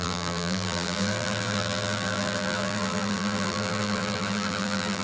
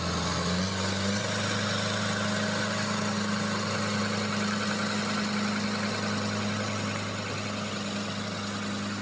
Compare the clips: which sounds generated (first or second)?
first